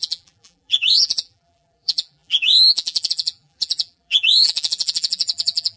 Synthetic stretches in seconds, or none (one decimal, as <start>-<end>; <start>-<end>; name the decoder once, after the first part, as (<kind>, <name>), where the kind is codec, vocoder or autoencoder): 0.0-5.8 (vocoder, BigVGAN v2)